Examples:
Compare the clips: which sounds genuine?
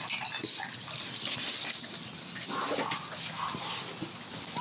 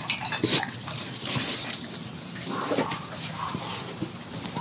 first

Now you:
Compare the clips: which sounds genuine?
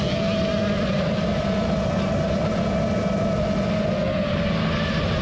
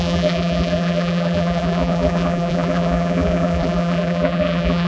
first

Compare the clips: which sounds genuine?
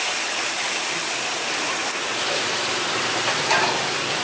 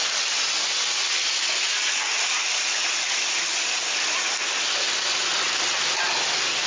second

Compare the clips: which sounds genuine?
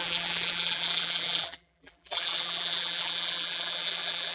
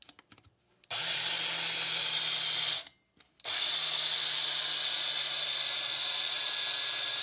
second